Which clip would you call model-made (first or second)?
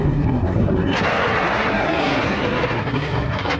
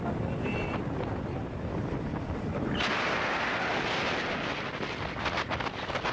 first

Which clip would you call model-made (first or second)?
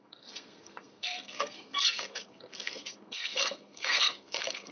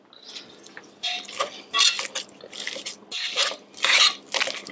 first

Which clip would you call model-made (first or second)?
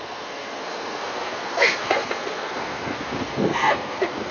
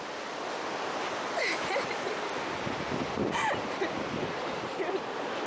first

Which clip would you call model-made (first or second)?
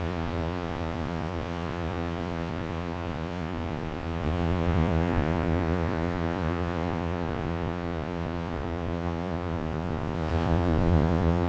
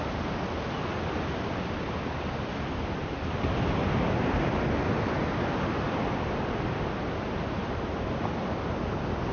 first